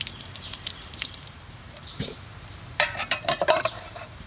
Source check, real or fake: fake